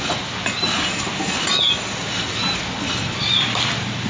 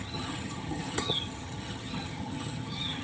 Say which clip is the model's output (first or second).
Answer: second